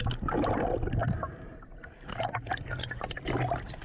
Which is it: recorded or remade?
recorded